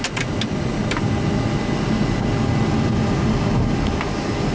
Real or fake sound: real